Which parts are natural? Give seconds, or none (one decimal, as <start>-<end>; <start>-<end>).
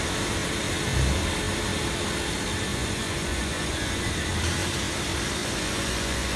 0.0-2.7; 4.1-5.4